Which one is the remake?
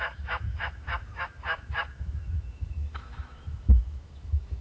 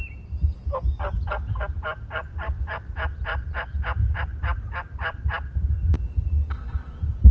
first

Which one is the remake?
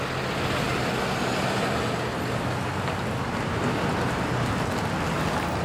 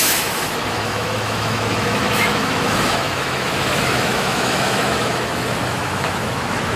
second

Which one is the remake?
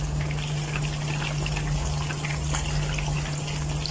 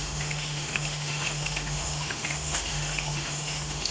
second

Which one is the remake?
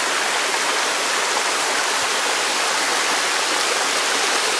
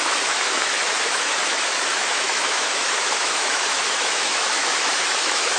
second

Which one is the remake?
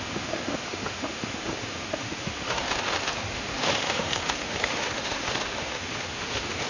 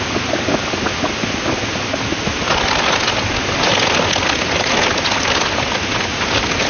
first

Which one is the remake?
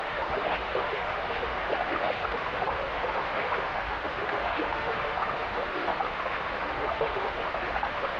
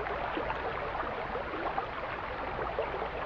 first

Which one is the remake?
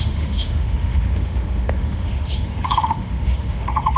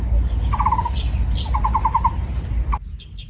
first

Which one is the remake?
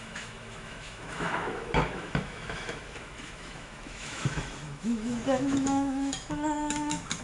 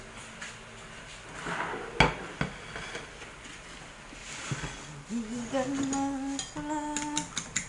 first